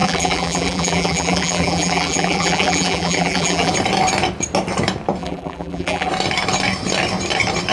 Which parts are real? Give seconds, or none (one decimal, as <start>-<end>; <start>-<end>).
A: 3.7-5.2; 6.1-7.7